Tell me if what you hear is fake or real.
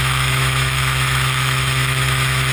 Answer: fake